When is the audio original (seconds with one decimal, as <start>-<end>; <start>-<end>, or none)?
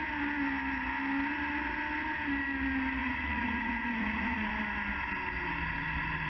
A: 0.0-3.0; 4.5-6.3